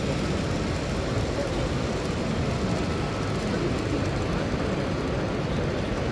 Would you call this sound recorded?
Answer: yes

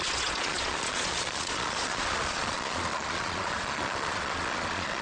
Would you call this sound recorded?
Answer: no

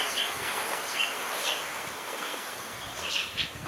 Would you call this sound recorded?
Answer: no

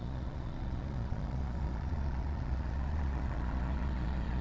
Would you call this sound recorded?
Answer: no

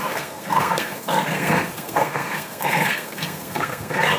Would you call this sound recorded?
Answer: no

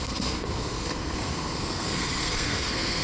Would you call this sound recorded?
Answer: no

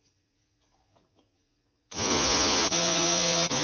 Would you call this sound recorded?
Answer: no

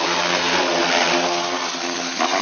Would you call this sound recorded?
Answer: yes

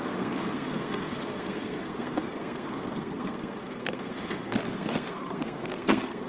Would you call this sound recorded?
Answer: no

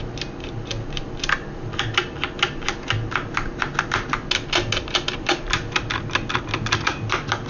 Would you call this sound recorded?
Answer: yes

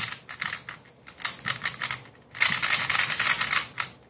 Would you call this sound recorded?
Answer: yes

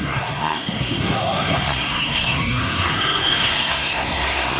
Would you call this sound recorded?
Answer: no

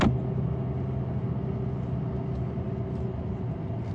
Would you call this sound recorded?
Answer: yes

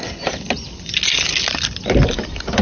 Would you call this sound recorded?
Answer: yes